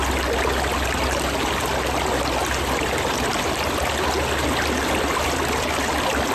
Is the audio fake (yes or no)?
no